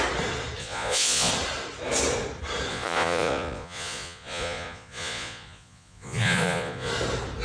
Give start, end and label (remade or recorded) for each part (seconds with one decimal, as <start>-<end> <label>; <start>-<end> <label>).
0.0-0.6 recorded; 0.6-1.3 remade; 1.3-2.7 recorded; 2.7-6.9 remade; 6.9-7.4 recorded